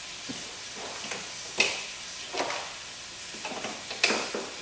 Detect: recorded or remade recorded